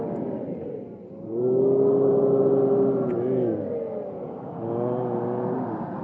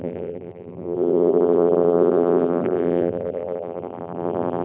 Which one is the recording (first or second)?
first